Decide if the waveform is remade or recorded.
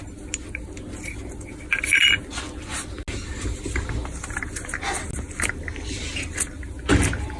recorded